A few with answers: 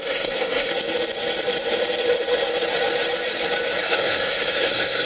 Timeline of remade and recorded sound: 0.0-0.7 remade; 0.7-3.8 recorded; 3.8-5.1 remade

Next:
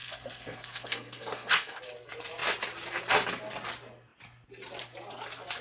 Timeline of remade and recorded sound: 0.0-1.8 remade; 1.8-5.6 recorded

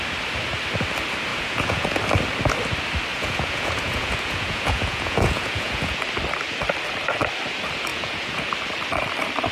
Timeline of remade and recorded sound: 0.0-1.3 recorded; 1.3-2.0 remade; 2.0-3.1 recorded; 3.1-6.0 remade; 6.0-7.9 recorded; 7.9-8.5 remade; 8.5-9.5 recorded

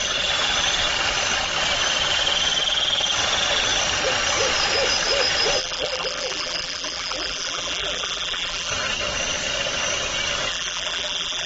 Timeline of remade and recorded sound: 0.0-5.6 recorded; 5.6-8.7 remade; 8.7-10.5 recorded; 10.5-11.5 remade

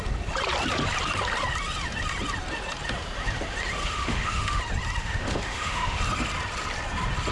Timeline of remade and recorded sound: 0.0-3.8 recorded; 3.8-4.6 remade; 4.6-5.0 recorded; 5.0-6.0 remade; 6.0-7.3 recorded

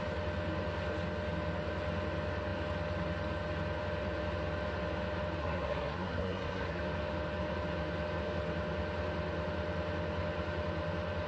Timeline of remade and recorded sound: 0.0-5.4 recorded; 5.4-6.8 remade; 6.8-11.3 recorded

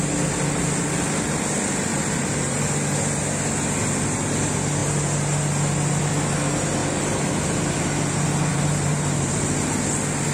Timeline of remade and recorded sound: 0.0-1.9 recorded; 1.9-2.6 remade; 2.6-6.8 recorded; 6.8-7.3 remade; 7.3-8.5 recorded; 8.5-9.9 remade; 9.9-10.3 recorded

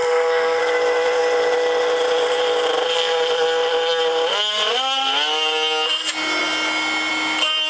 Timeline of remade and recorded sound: 0.0-0.6 remade; 0.6-7.7 recorded